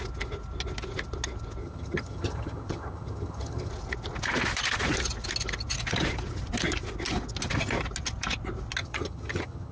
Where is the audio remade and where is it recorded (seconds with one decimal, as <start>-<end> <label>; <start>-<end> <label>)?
0.0-1.6 recorded; 1.6-3.7 remade; 3.7-8.8 recorded; 8.8-9.7 remade